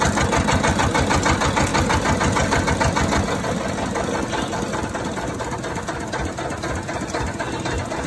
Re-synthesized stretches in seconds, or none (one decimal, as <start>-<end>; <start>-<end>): none